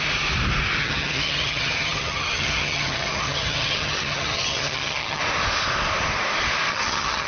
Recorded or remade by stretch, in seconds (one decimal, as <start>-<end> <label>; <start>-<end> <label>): 0.0-0.8 recorded; 0.8-5.2 remade; 5.2-6.7 recorded; 6.7-7.3 remade